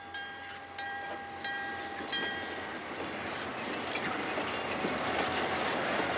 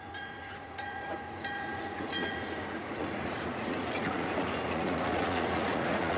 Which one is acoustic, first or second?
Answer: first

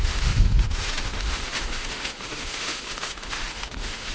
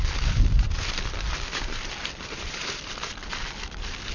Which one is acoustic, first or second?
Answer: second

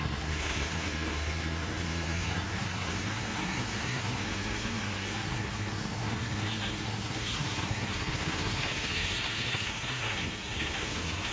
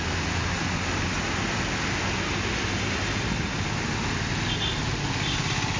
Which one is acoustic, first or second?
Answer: second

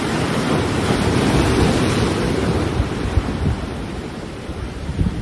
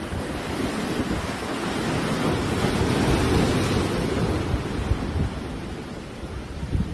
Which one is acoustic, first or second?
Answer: second